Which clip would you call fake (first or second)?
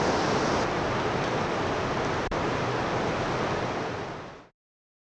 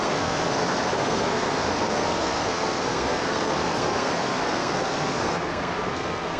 second